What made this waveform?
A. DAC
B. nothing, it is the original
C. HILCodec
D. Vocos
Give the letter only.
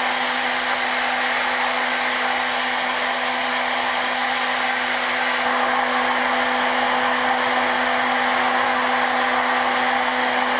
B